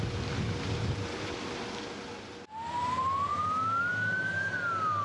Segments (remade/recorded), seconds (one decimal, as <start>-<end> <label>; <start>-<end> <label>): 0.0-5.0 recorded